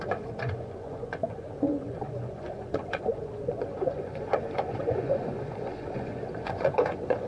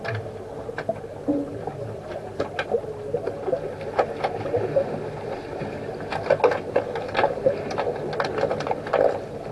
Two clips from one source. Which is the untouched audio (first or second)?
second